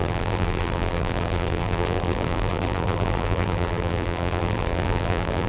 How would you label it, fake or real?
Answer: fake